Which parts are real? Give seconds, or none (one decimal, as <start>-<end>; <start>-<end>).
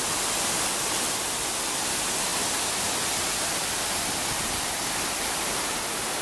0.0-6.2